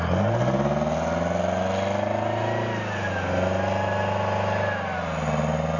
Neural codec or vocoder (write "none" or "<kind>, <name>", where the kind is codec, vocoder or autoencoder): none